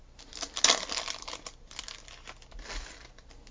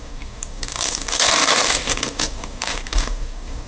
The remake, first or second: second